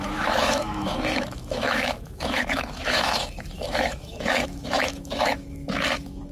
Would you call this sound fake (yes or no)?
yes